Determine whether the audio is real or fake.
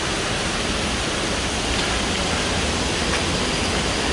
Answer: real